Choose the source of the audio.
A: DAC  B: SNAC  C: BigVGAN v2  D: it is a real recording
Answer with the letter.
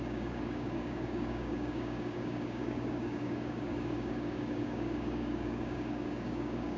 A